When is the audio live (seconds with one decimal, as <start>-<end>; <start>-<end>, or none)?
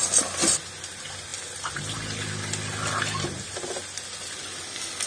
0.0-5.1